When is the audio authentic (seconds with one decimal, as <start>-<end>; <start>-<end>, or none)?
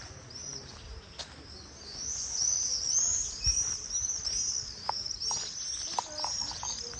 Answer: 0.0-1.9; 2.6-7.0